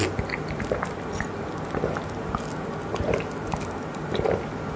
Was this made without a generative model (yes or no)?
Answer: yes